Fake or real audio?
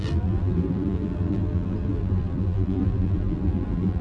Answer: fake